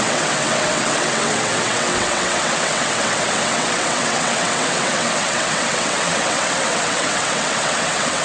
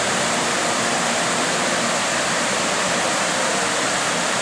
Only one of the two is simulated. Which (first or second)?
first